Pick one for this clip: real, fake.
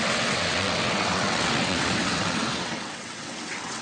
fake